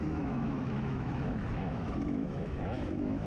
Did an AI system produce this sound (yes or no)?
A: yes